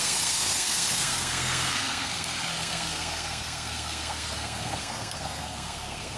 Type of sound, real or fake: fake